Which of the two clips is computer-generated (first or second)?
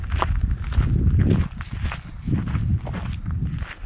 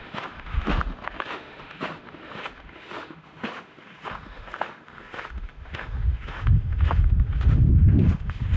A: second